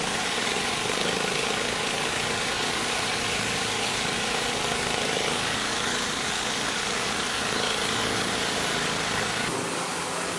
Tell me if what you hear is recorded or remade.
remade